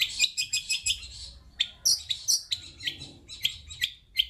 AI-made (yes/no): no